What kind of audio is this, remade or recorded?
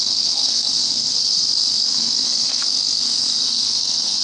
remade